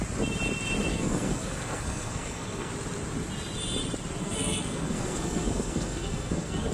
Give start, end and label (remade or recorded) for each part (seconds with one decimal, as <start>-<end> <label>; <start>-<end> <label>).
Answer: 0.0-0.9 recorded; 0.9-2.7 remade; 2.7-4.2 recorded; 4.2-6.7 remade